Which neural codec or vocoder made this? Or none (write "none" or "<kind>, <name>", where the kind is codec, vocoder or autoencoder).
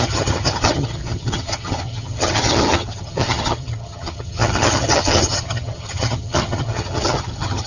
vocoder, HiFi-GAN